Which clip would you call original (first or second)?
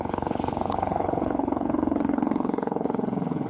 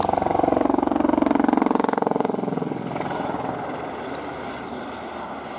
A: second